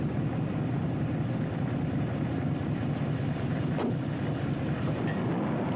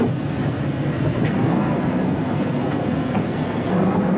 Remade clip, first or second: second